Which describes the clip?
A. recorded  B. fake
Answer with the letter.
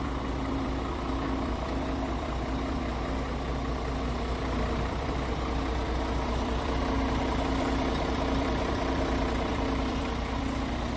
B